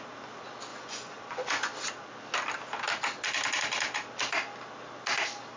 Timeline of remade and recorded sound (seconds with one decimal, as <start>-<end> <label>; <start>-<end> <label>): 0.0-0.7 recorded; 0.7-1.7 remade; 1.7-5.6 recorded